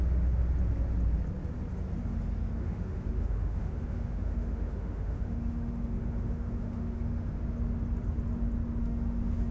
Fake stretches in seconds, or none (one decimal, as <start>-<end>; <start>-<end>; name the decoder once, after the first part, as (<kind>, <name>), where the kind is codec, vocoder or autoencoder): 2.6-7.3 (autoencoder, DAC-VAE); 8.8-9.5